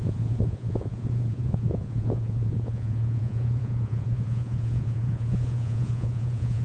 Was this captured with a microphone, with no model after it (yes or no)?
no